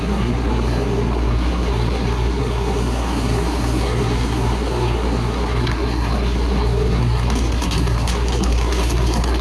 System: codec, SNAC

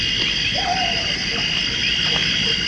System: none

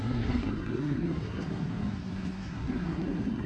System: codec, SNAC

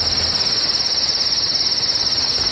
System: none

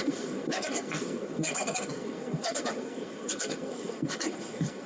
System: codec, SNAC